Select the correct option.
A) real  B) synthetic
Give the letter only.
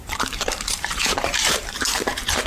B